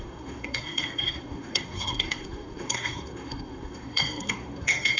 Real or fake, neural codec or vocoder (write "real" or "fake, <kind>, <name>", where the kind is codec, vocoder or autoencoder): fake, codec, SNAC